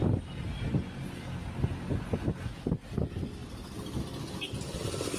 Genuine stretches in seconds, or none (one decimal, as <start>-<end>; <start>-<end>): 0.0-5.2